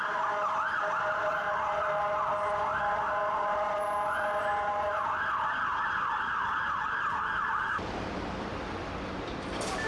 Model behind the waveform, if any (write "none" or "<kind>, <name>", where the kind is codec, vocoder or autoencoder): none